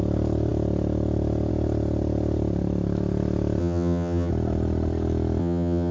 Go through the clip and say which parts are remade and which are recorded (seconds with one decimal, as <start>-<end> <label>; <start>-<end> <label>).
0.0-3.6 recorded; 3.6-4.3 remade; 4.3-5.4 recorded; 5.4-5.9 remade